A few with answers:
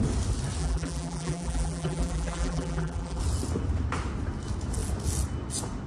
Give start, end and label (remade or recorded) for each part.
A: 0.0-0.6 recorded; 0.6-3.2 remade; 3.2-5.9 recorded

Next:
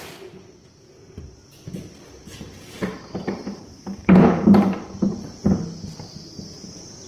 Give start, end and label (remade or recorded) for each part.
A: 0.0-2.2 recorded; 2.2-5.4 remade; 5.4-7.1 recorded

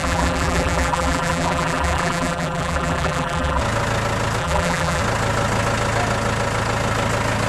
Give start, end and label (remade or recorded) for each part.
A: 0.0-3.6 remade; 3.6-4.4 recorded; 4.4-5.0 remade; 5.0-7.5 recorded